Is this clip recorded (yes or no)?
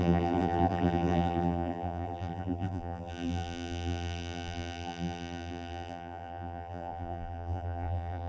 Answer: no